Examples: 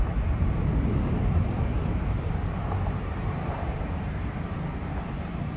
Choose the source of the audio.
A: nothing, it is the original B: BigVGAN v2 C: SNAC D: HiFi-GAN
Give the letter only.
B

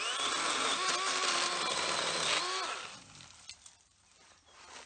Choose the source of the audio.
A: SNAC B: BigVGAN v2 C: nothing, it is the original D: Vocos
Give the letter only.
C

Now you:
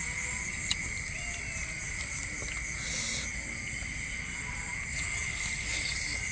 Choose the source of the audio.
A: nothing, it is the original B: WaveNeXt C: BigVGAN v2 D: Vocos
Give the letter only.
A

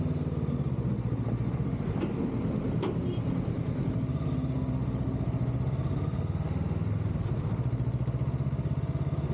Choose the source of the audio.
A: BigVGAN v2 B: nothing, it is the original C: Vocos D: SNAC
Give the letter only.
B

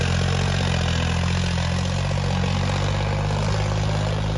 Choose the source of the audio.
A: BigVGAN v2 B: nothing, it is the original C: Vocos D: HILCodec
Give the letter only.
B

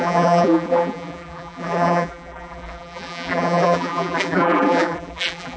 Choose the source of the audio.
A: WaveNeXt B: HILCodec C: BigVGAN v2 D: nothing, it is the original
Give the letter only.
C